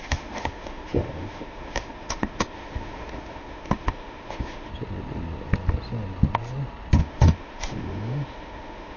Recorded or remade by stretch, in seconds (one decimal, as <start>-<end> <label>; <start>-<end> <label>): 0.0-4.7 remade; 4.7-7.0 recorded; 7.0-9.0 remade